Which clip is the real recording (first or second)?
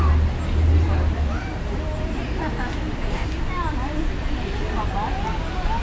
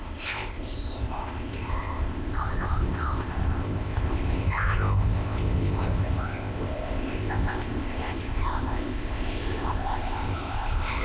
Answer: first